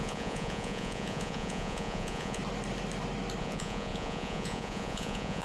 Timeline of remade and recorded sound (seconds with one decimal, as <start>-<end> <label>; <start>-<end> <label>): 0.0-2.4 remade; 2.4-3.4 recorded; 3.4-5.4 remade